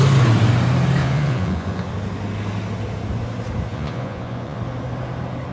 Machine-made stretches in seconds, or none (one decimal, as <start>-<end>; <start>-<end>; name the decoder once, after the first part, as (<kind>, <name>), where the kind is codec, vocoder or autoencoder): 1.0-1.9 (vocoder, Vocos); 3.7-4.6